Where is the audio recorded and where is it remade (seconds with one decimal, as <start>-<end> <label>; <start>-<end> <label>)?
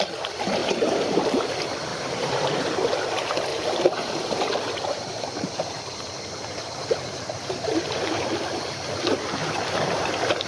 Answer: 0.0-0.6 recorded; 0.6-1.5 remade; 1.5-1.9 recorded; 1.9-2.9 remade; 2.9-3.5 recorded; 3.5-6.0 remade; 6.0-9.4 recorded; 9.4-10.0 remade; 10.0-10.5 recorded